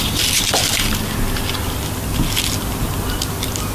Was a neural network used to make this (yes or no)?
no